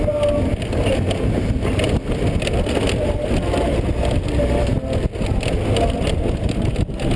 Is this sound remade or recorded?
recorded